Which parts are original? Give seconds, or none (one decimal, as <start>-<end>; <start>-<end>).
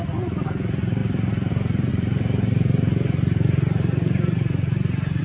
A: 0.0-5.2